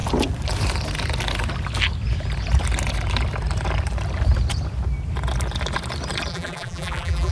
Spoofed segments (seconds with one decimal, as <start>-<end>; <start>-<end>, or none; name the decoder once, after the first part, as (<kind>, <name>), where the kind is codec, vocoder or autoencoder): 6.3-7.3 (vocoder, BigVGAN v2)